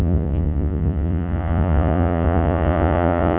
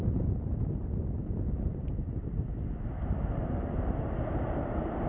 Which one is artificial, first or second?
first